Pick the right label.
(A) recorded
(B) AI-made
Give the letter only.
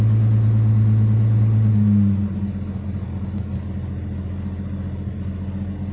A